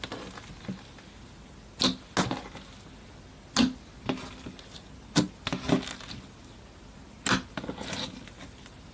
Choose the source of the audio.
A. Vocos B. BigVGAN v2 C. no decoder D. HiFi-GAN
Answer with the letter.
C